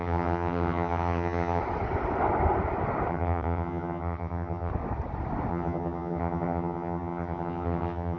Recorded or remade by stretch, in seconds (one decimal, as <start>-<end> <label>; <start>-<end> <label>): 0.0-1.6 remade; 1.6-3.1 recorded; 3.1-4.7 remade; 4.7-5.5 recorded; 5.5-8.2 remade